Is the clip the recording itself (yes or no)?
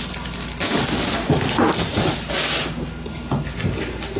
yes